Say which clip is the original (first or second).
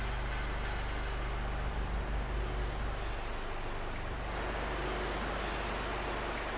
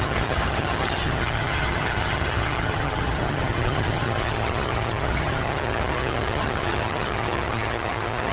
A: first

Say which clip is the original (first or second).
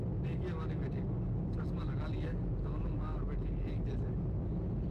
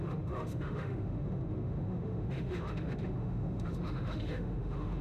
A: first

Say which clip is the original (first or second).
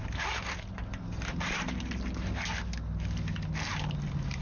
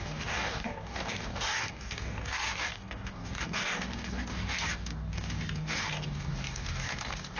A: first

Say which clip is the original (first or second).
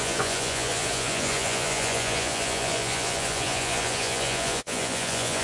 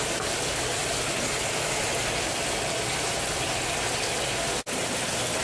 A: second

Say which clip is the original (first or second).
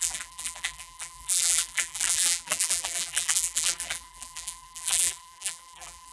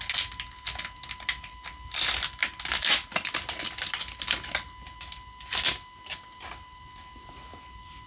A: second